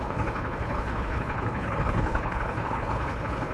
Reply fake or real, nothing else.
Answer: fake